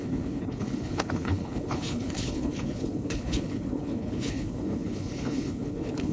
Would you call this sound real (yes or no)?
no